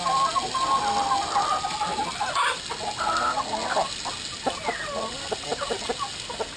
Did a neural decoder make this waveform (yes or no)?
no